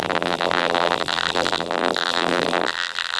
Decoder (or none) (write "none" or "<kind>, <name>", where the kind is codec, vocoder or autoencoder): vocoder, BigVGAN v2